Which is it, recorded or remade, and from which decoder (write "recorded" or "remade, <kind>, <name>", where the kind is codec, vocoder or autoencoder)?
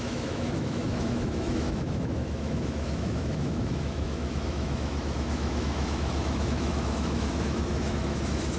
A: remade, autoencoder, DAC-VAE